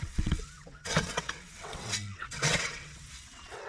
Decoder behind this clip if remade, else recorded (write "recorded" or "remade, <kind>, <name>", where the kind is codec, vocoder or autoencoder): remade, vocoder, WaveNeXt